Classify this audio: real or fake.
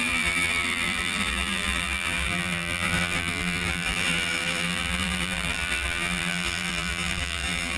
fake